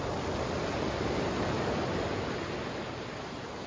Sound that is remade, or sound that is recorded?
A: recorded